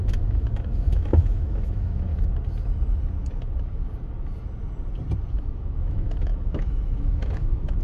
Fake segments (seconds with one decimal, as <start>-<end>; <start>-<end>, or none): 0.0-2.1; 5.3-7.8